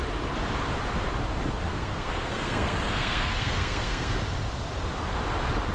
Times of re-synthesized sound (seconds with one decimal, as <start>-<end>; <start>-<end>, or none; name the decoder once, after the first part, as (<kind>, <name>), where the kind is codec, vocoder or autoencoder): 1.7-4.1 (codec, SNAC)